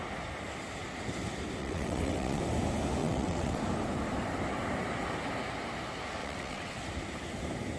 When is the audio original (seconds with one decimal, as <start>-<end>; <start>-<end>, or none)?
0.0-1.6; 2.4-3.0; 3.6-6.2; 6.7-7.8